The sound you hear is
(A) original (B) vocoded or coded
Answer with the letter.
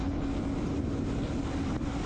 A